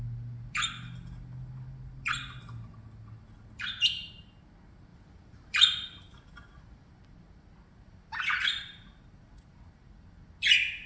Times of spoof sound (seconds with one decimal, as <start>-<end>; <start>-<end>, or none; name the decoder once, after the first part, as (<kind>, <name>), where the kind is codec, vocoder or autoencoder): 4.9-6.9 (vocoder, BigVGAN v2)